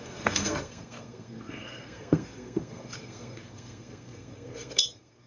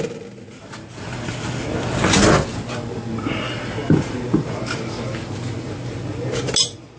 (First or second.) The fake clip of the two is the first